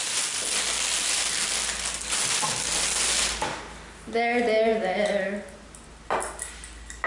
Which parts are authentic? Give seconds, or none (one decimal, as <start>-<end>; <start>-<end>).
0.0-7.1